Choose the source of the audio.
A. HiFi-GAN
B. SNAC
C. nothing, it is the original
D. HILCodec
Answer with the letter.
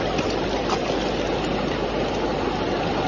C